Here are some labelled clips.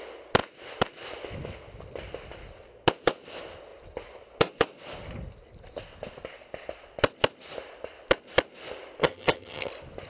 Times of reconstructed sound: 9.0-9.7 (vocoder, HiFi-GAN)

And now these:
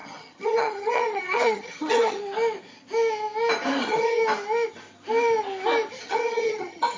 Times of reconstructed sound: 0.0-2.2 (vocoder, HiFi-GAN); 3.8-4.2; 6.0-7.0

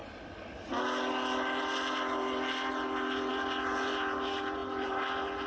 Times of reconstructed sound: none

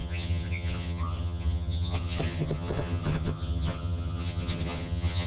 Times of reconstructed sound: 0.0-5.3 (vocoder, HiFi-GAN)

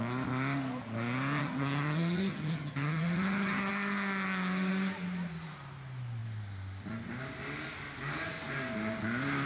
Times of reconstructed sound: 1.4-3.7 (vocoder, HiFi-GAN)

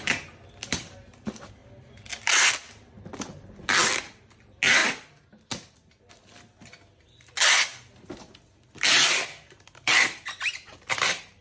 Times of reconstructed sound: none